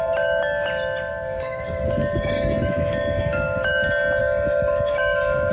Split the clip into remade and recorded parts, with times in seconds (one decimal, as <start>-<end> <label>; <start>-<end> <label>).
0.0-1.1 recorded; 1.1-3.7 remade; 3.7-4.2 recorded; 4.2-5.5 remade